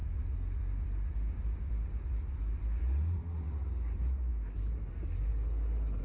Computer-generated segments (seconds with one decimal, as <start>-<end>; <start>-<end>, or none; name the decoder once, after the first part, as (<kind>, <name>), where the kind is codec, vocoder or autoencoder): none